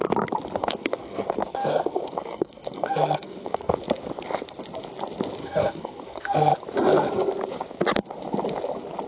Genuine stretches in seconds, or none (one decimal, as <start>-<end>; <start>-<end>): 0.0-0.6; 3.8-5.4; 6.5-9.1